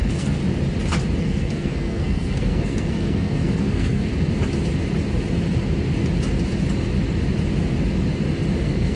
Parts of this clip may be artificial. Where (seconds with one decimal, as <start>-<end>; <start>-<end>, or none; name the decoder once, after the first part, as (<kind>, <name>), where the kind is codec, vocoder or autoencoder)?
0.0-0.4 (codec, SNAC); 1.2-4.1; 8.6-9.0